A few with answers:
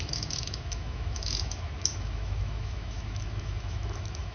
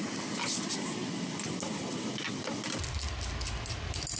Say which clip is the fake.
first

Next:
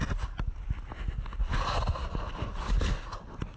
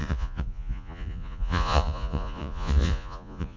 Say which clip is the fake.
second